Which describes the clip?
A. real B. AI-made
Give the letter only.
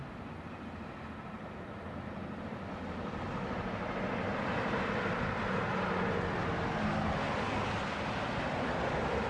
A